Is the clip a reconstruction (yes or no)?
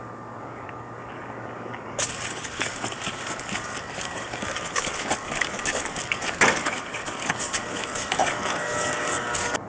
yes